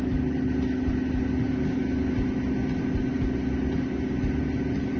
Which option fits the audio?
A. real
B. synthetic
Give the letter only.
A